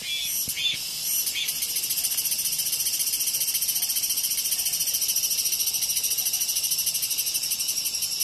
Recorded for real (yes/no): yes